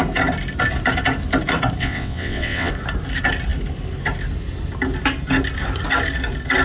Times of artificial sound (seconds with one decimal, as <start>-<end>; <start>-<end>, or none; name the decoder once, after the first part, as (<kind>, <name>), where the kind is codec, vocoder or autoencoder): 1.8-2.7 (vocoder, WaveNeXt)